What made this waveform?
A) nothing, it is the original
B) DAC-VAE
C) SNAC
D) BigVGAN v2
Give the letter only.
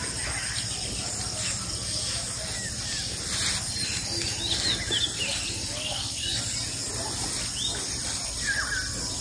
A